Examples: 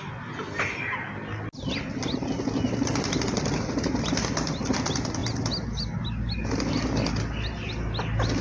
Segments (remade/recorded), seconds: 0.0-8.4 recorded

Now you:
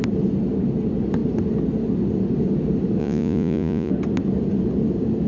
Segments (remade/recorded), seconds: 0.0-3.0 recorded; 3.0-3.9 remade; 3.9-5.3 recorded

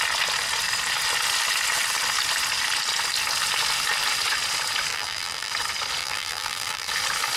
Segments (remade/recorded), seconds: 0.0-4.9 recorded; 4.9-5.5 remade; 5.5-6.0 recorded; 6.0-6.9 remade; 6.9-7.4 recorded

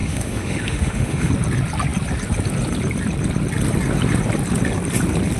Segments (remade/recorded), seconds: 0.0-1.3 remade; 1.3-5.4 recorded

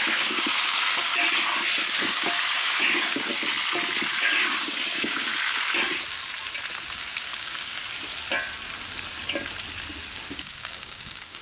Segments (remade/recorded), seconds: 0.0-1.1 remade; 1.1-2.0 recorded; 2.0-3.3 remade; 3.3-4.1 recorded; 4.1-5.3 remade; 5.3-6.9 recorded; 6.9-7.8 remade; 7.8-10.1 recorded; 10.1-11.4 remade